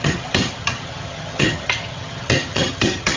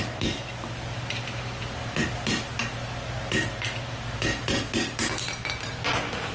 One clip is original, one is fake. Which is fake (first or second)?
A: first